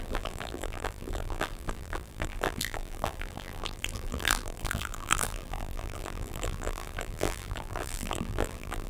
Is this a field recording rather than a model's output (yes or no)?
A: no